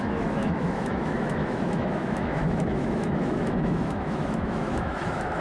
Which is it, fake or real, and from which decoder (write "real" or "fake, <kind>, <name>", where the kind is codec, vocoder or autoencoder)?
fake, autoencoder, DAC-VAE